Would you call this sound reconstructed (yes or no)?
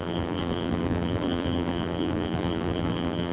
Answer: yes